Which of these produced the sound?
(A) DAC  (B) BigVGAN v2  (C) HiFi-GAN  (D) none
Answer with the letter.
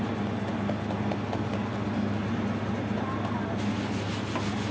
D